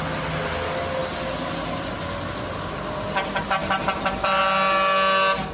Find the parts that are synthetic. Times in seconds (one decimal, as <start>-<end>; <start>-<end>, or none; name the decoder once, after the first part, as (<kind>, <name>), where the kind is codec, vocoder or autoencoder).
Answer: 3.6-4.4 (vocoder, BigVGAN v2)

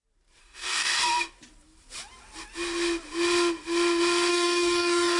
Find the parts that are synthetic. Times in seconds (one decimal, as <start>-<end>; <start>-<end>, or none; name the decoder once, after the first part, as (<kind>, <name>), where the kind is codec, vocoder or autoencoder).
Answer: 0.4-1.0 (codec, DAC); 4.3-5.2

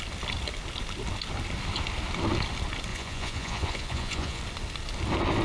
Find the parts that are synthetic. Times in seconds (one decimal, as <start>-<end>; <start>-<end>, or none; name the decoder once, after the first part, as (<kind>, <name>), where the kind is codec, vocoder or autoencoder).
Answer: 2.9-4.4 (vocoder, Vocos)

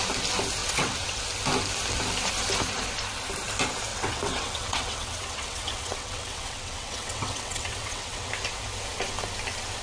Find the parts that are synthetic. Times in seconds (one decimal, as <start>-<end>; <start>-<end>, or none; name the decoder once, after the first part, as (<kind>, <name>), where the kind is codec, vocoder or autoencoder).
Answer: 0.6-1.2 (vocoder, WaveNeXt); 3.9-8.3